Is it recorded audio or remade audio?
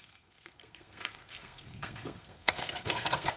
remade